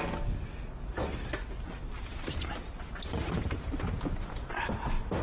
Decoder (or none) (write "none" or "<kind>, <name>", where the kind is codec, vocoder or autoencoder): none